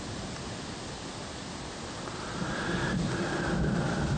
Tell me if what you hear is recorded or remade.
recorded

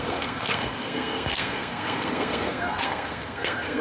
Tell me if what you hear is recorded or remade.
remade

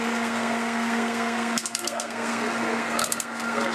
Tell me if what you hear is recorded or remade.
remade